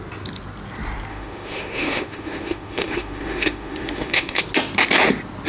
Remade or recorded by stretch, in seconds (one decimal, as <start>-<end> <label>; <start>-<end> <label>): 0.0-1.1 recorded; 1.1-4.4 remade; 4.4-5.5 recorded